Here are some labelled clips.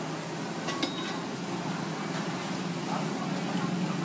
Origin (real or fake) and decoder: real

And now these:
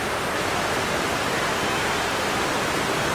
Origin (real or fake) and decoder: real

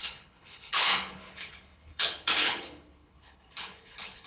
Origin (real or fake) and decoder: fake, codec, HILCodec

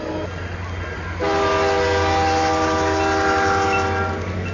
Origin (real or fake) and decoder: real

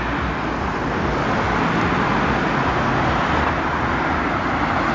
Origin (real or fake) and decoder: real